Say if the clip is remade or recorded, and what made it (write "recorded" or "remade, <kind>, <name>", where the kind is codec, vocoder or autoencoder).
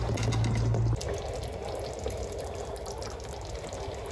recorded